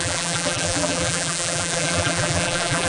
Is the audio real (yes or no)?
no